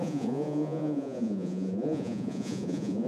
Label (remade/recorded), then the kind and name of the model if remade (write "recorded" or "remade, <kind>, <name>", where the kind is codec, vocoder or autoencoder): remade, vocoder, Vocos